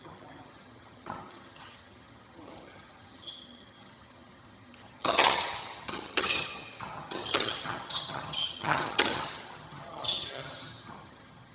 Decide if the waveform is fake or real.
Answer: fake